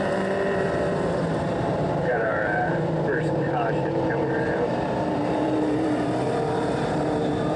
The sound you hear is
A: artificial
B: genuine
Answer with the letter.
A